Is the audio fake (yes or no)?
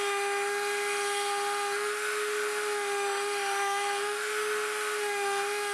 yes